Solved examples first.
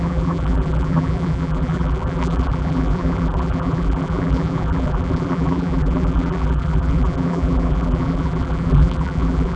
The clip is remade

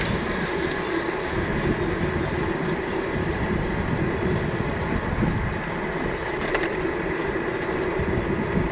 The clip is recorded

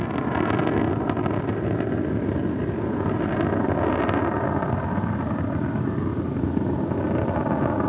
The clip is recorded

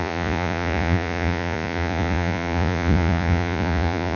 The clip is remade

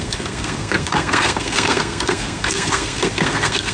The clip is remade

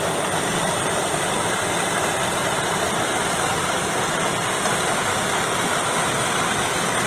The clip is recorded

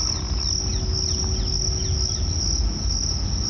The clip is recorded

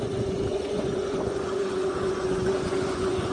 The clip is remade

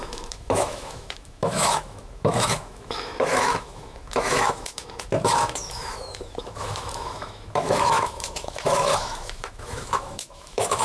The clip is remade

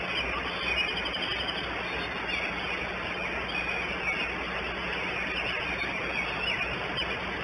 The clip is recorded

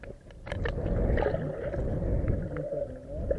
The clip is recorded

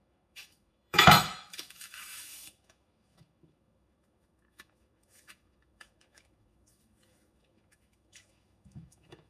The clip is remade